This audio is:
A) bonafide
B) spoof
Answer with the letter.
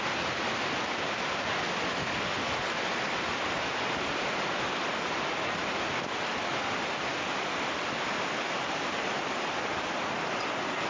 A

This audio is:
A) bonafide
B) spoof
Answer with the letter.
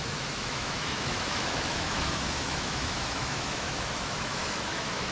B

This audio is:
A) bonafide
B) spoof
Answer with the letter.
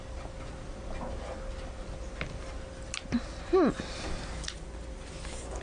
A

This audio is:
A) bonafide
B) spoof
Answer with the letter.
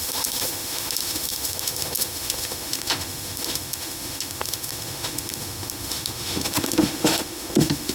B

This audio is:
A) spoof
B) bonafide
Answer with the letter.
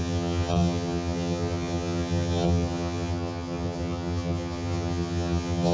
A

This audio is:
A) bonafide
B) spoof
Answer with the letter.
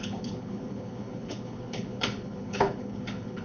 B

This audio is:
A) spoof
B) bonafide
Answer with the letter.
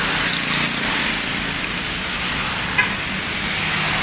B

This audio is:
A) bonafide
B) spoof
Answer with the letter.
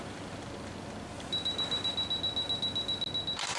A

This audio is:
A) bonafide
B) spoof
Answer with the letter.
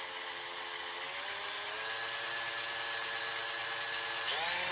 A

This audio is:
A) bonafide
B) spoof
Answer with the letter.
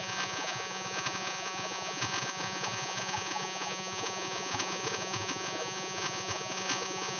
B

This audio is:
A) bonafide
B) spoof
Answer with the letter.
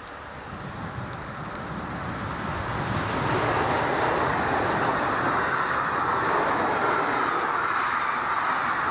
A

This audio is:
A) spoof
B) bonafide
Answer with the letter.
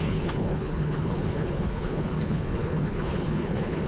A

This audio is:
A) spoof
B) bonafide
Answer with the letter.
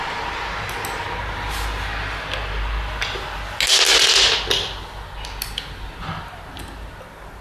B